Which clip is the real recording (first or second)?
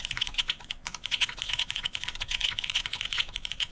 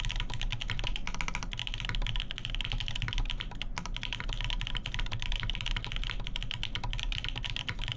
second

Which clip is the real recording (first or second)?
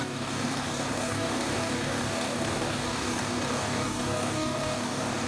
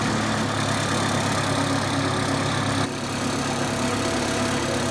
second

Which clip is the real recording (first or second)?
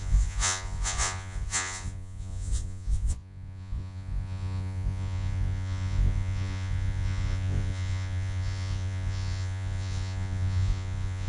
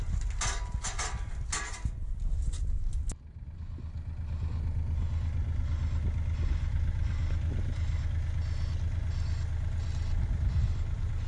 second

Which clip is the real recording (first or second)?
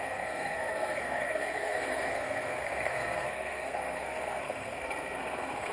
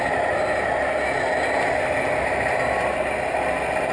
second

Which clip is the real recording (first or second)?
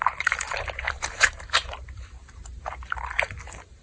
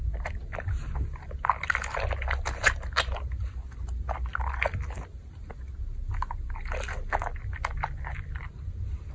second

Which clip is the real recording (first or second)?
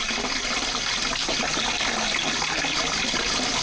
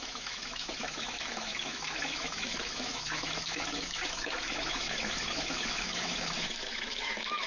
first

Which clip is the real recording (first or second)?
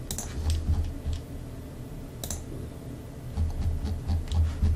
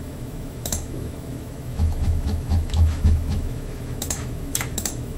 first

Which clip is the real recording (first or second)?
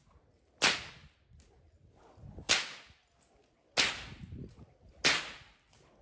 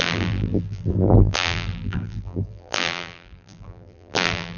first